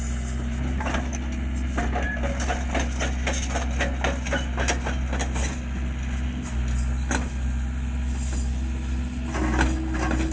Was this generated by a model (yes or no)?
no